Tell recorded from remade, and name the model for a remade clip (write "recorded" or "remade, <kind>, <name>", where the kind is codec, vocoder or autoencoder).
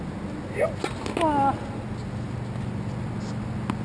recorded